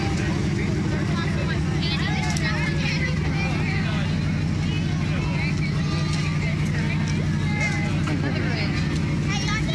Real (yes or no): yes